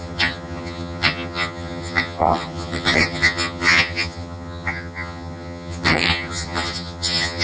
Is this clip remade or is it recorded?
remade